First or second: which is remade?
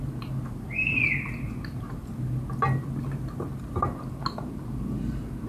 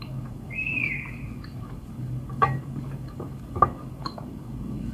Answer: second